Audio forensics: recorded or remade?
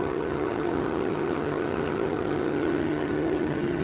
remade